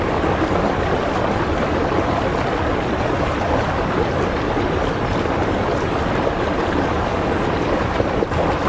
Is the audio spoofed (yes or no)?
no